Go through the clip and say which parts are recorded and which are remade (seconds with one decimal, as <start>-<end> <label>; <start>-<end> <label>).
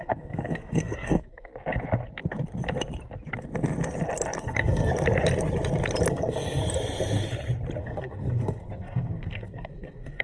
0.0-1.5 remade; 1.5-4.4 recorded; 4.4-4.9 remade; 4.9-6.1 recorded; 6.1-6.6 remade; 6.6-7.8 recorded; 7.8-10.2 remade